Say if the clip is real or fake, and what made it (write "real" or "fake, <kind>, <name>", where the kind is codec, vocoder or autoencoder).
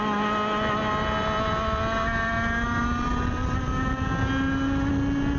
real